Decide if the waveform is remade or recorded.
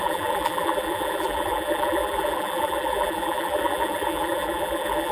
remade